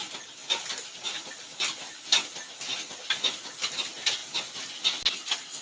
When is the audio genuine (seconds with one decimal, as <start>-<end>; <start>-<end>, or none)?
0.0-5.6